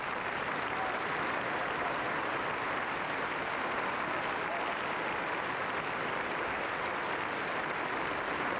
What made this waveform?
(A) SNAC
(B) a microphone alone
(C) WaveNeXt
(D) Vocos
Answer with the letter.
B